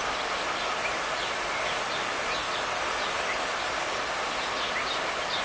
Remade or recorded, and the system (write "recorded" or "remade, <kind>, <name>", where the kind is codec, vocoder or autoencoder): recorded